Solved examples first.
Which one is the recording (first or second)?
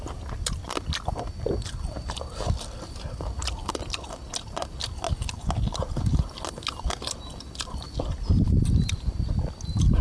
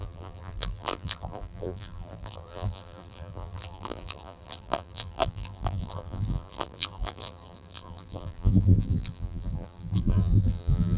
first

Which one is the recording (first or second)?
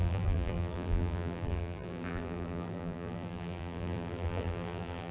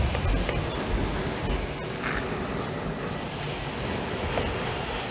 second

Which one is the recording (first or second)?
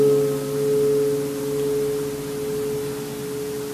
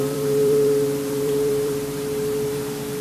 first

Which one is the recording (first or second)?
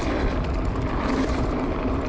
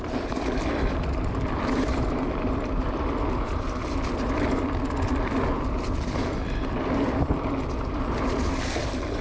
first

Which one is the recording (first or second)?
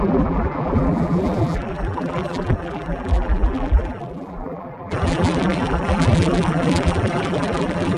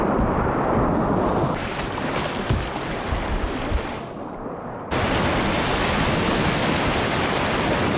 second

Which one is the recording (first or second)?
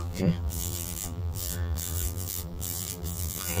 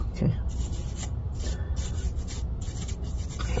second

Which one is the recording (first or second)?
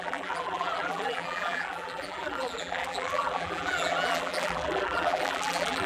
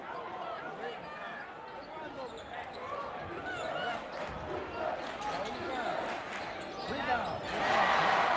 second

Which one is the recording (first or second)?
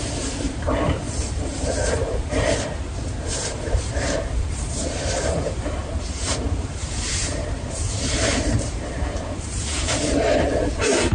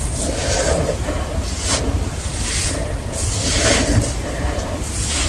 second